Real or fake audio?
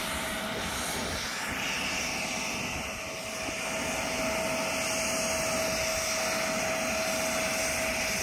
real